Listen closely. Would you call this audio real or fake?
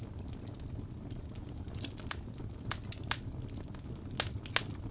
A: real